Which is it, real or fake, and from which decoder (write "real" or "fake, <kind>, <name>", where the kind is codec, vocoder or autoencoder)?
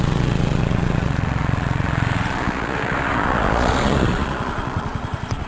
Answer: fake, vocoder, Vocos